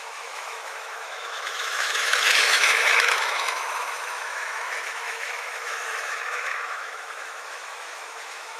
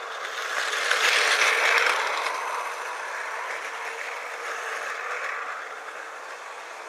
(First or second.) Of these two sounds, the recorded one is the second